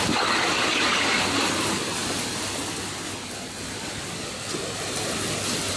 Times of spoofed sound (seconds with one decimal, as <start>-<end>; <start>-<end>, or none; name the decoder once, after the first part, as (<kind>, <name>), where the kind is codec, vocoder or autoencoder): none